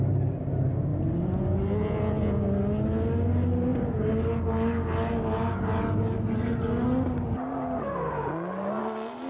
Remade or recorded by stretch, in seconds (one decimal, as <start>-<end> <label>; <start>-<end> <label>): 0.0-9.3 recorded